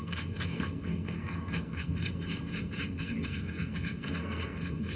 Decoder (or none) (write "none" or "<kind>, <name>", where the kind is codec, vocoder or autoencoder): codec, SNAC